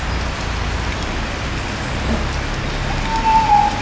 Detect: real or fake real